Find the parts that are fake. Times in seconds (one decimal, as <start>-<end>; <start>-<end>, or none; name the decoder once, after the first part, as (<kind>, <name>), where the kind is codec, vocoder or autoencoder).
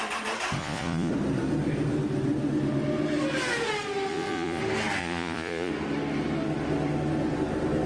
0.6-1.1 (vocoder, Vocos); 4.1-4.6; 5.0-5.7